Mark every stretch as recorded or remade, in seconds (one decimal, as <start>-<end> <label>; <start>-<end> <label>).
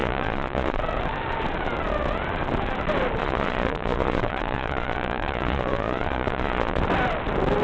0.0-0.8 remade; 0.8-3.2 recorded; 3.2-6.8 remade; 6.8-7.6 recorded